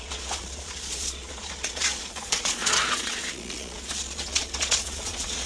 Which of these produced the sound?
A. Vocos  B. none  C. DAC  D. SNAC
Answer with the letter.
A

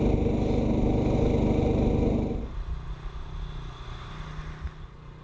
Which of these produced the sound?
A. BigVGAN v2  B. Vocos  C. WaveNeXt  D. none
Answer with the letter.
D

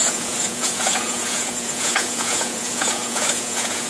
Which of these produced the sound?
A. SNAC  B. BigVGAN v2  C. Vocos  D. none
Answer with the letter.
C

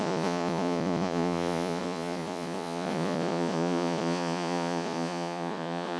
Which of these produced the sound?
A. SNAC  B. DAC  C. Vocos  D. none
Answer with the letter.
C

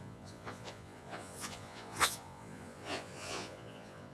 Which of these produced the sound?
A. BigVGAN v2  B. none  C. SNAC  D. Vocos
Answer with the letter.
D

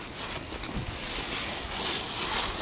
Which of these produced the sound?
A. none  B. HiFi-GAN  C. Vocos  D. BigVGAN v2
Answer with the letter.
A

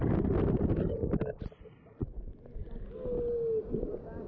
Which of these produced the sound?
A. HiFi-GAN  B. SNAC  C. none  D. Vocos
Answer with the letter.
C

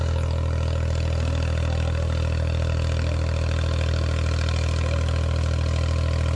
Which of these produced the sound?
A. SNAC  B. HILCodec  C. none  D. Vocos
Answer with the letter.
C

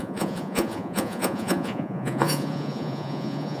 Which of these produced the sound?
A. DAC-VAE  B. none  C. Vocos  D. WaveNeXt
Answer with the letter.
C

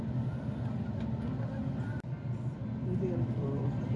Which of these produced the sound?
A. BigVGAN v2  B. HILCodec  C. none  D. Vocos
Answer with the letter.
C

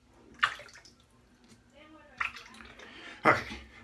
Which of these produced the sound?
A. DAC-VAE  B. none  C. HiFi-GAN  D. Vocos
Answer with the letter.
B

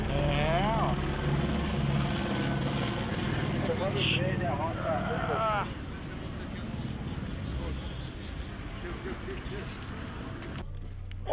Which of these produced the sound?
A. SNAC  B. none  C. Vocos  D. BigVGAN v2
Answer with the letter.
B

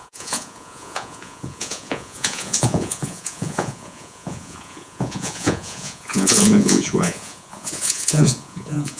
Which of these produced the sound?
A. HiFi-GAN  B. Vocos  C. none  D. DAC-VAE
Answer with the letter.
B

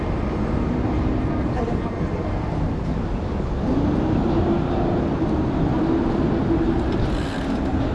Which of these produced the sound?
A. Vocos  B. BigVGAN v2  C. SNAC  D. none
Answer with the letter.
D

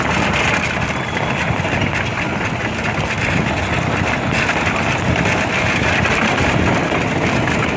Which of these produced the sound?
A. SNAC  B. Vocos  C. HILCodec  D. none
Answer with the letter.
D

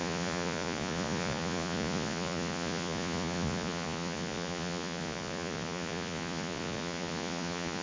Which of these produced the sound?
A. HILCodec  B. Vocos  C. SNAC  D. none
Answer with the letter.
B